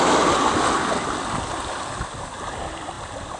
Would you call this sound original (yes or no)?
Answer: yes